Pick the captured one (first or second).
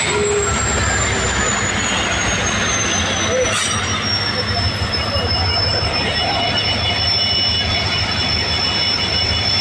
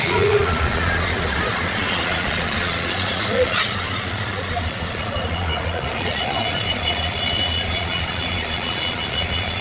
first